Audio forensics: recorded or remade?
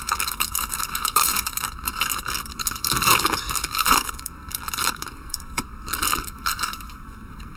remade